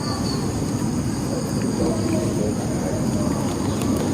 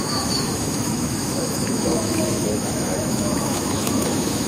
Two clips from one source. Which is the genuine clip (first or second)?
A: first